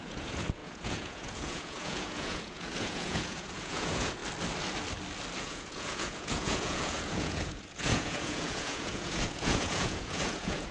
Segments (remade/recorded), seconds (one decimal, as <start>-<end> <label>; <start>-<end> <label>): 0.0-4.2 remade; 4.2-5.4 recorded; 5.4-10.7 remade